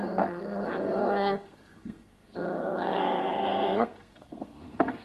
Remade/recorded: remade